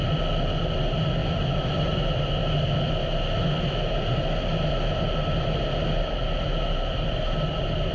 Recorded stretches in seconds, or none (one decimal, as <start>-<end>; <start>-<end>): 0.0-1.2; 1.9-7.9